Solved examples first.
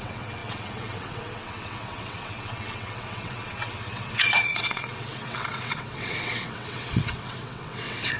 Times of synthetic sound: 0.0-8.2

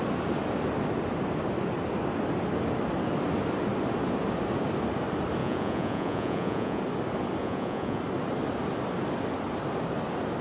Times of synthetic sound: 5.4-6.8; 7.4-8.0

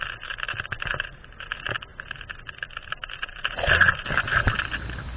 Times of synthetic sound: none

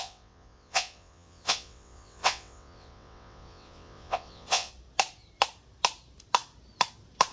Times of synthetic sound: 0.0-4.7

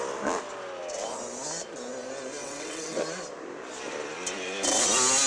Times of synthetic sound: 2.4-3.0

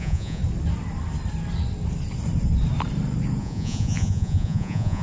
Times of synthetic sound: 0.0-0.4; 3.4-5.0

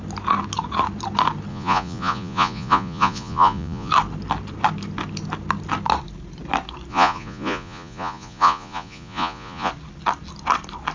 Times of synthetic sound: 1.5-3.9; 6.9-9.7